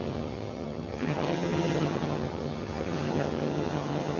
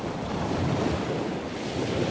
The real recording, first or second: second